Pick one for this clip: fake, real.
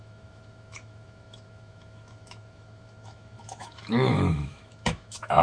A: fake